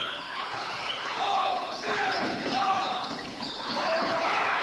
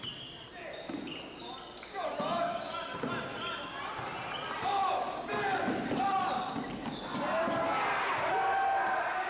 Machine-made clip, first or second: first